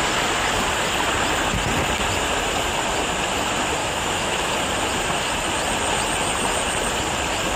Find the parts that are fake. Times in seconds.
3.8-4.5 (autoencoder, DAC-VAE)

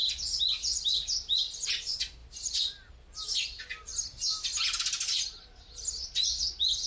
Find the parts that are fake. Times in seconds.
none